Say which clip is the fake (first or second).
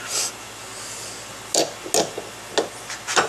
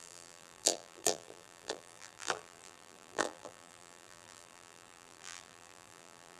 second